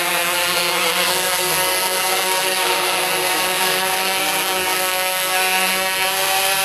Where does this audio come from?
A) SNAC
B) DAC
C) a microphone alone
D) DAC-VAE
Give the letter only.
A